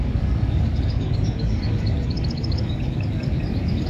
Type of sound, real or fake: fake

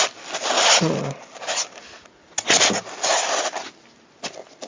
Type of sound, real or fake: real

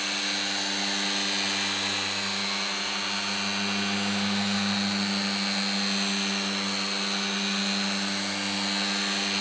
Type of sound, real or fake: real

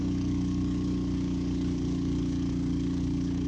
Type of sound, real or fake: fake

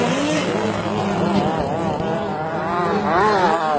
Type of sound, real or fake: real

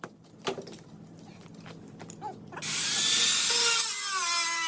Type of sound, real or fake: real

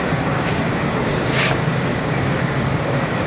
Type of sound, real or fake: fake